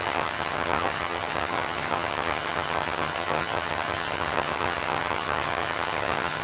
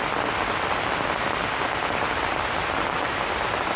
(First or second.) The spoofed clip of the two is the first